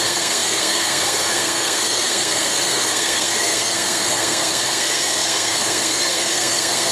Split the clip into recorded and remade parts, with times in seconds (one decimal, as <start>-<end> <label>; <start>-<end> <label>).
0.0-6.9 remade